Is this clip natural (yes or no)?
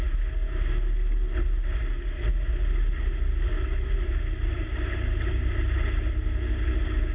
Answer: yes